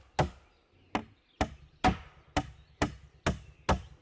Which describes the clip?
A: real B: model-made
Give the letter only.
A